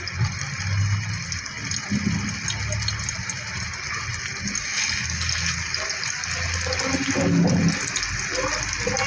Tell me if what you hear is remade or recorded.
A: recorded